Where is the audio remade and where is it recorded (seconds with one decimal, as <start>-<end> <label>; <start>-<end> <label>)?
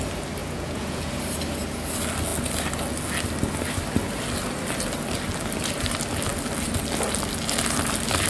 0.0-0.4 recorded; 0.4-1.1 remade; 1.1-8.3 recorded